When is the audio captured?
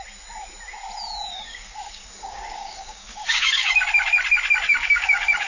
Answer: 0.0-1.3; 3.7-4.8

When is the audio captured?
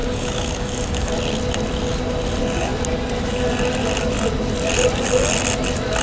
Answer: 1.1-6.0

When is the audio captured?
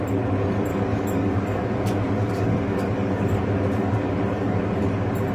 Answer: 0.0-0.7; 3.4-3.8; 4.6-5.3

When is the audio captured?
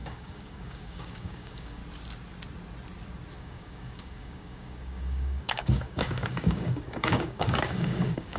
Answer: 1.8-3.4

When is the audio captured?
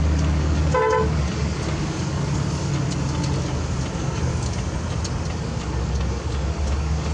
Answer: 2.7-3.9; 4.3-5.4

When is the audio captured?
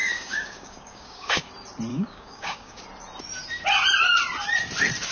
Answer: 1.5-1.9; 2.8-5.1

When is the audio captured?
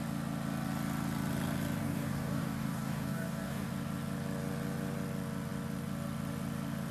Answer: 0.0-1.8; 3.7-6.9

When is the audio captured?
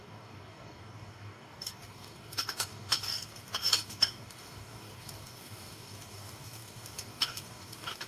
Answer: none